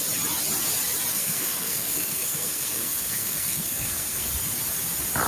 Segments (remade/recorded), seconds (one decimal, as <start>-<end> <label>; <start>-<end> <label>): 0.0-1.1 recorded; 1.1-4.3 remade; 4.3-5.3 recorded